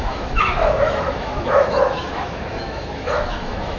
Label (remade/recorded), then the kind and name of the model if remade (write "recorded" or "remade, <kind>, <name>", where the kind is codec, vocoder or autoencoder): remade, autoencoder, DAC-VAE